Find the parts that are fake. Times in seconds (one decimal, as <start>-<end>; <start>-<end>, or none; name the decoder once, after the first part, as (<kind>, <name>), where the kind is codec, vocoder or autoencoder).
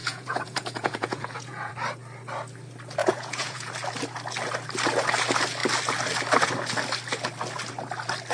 0.0-1.7 (vocoder, Vocos); 3.0-3.7